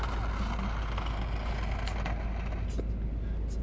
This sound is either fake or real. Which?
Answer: real